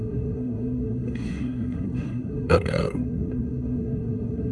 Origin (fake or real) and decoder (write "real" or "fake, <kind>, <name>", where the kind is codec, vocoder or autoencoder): fake, codec, SNAC